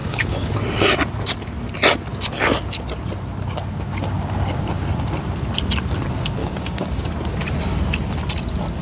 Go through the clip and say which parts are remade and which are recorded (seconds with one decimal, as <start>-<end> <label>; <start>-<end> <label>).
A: 0.0-0.5 remade; 0.5-6.4 recorded; 6.4-7.1 remade; 7.1-8.8 recorded